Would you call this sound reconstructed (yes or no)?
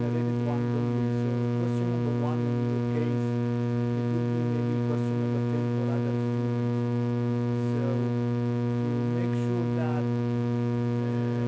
no